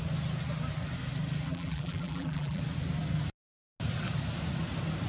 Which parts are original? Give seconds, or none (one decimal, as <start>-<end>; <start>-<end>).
0.0-1.5; 2.6-5.1